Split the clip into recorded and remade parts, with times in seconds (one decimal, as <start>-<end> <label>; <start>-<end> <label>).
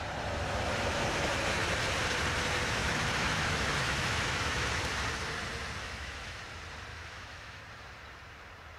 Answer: 0.0-2.8 recorded; 2.8-4.8 remade; 4.8-5.8 recorded; 5.8-6.4 remade; 6.4-6.9 recorded; 6.9-7.6 remade; 7.6-8.8 recorded